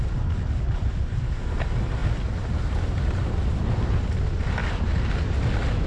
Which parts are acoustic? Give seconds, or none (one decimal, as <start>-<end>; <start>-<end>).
0.0-4.6; 5.1-5.9